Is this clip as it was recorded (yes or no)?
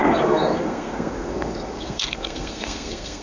no